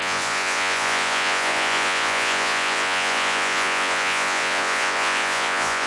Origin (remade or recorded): remade